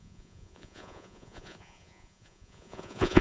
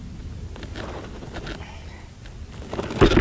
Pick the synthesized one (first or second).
first